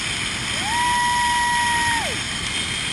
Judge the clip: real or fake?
real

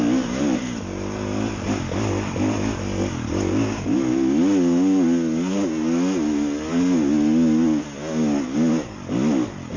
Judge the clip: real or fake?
real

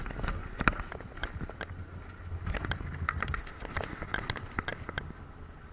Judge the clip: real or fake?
real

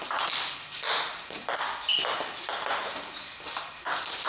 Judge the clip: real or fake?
real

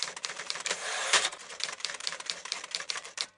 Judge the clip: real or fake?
fake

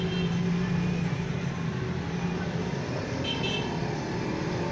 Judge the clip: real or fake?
real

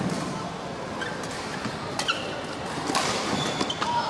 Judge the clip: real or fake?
real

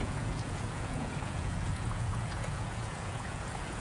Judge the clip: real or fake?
fake